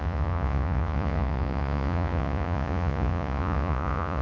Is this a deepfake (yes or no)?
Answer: yes